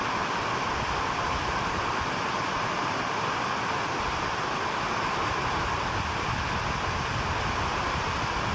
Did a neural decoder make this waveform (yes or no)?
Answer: no